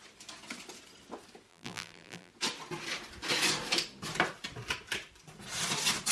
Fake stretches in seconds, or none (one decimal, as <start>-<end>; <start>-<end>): 1.5-2.3